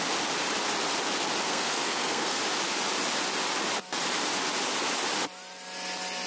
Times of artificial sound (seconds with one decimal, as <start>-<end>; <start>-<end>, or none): 1.5-2.4